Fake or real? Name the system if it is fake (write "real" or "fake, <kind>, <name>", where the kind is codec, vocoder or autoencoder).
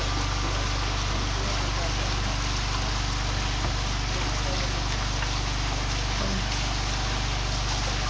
real